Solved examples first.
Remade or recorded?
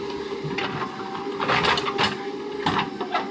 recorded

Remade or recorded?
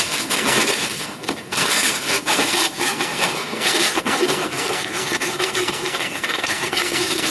remade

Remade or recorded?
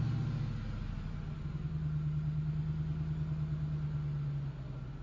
recorded